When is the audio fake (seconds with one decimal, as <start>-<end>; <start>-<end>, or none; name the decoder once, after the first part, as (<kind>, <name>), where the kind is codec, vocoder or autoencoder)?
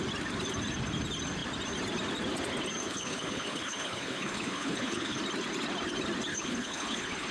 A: 2.8-5.2 (codec, HILCodec); 6.3-7.3